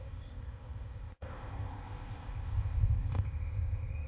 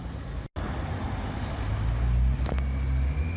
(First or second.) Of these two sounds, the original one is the second